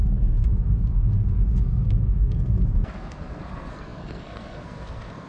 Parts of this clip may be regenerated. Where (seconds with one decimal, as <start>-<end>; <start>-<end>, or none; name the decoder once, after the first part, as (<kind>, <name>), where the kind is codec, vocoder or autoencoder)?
0.0-5.3 (codec, SNAC)